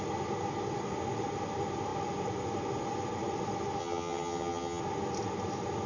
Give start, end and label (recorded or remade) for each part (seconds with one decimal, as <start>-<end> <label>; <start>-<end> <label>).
0.0-3.8 recorded; 3.8-4.8 remade; 4.8-5.9 recorded